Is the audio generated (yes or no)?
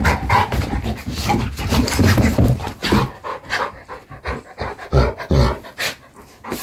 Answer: no